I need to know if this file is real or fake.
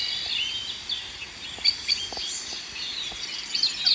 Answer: real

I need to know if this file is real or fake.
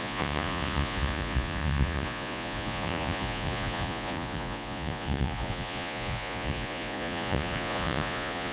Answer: fake